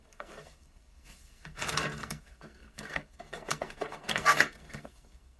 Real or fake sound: fake